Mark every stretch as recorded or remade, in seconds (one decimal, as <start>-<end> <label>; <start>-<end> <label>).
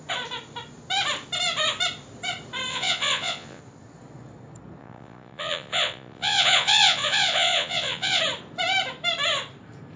0.0-2.7 recorded; 2.7-3.6 remade; 3.6-4.8 recorded; 4.8-8.2 remade; 8.2-10.0 recorded